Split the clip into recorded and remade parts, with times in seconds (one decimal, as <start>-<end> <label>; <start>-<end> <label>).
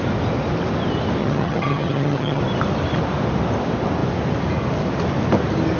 0.0-1.2 recorded; 1.2-2.4 remade; 2.4-5.8 recorded